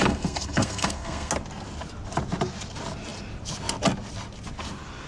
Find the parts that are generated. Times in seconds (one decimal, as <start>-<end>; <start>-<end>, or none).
0.0-1.3